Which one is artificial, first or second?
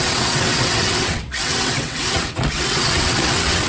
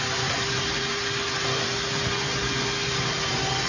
first